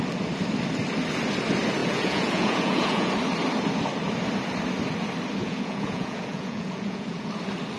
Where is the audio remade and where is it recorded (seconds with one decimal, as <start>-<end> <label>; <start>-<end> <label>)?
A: 0.0-1.8 recorded; 1.8-3.1 remade; 3.1-5.4 recorded; 5.4-7.3 remade; 7.3-7.8 recorded